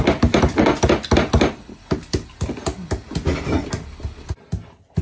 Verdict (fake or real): real